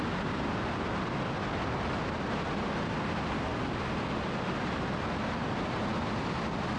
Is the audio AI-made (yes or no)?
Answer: no